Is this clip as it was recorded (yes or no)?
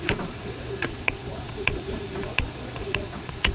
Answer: no